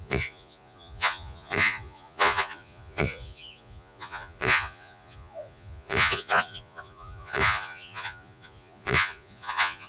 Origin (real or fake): fake